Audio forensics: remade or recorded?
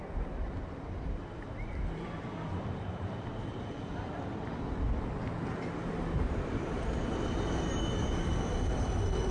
recorded